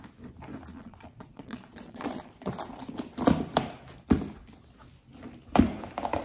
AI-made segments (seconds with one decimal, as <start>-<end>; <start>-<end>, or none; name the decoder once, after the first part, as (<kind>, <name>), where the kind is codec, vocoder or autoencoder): 0.7-2.5 (vocoder, Vocos)